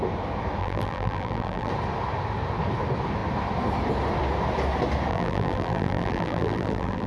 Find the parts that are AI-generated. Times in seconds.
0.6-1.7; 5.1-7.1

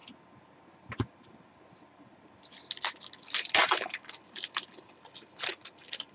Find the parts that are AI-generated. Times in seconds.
3.6-6.1

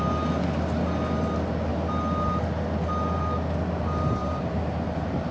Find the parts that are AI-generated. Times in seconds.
4.2-5.3

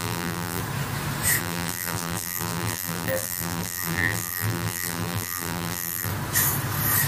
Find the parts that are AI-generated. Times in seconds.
0.0-0.6; 1.4-6.1